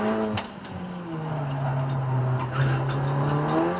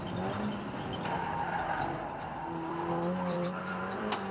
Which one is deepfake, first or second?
second